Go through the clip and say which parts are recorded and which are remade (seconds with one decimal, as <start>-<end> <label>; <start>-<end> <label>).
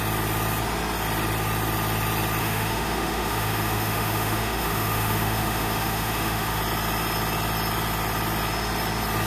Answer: 0.0-2.4 recorded; 2.4-6.6 remade; 6.6-9.3 recorded